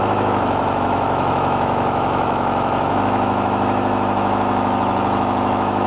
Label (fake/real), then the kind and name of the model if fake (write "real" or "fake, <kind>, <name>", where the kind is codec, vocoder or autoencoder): fake, autoencoder, DAC-VAE